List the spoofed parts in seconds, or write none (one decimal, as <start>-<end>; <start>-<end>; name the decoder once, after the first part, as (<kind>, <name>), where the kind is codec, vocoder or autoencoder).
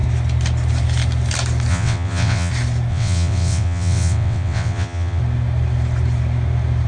1.7-2.5 (vocoder, WaveNeXt); 2.9-5.2